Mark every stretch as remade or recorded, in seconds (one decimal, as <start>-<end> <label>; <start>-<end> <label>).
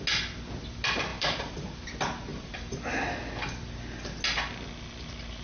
0.0-1.1 recorded; 1.1-1.8 remade; 1.8-2.3 recorded; 2.3-3.0 remade; 3.0-5.4 recorded